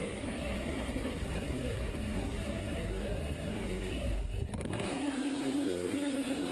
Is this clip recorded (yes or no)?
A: no